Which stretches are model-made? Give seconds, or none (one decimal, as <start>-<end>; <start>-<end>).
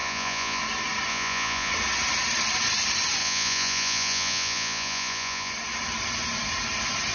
0.0-0.6; 1.1-1.7; 3.2-5.5